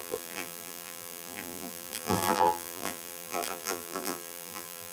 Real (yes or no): no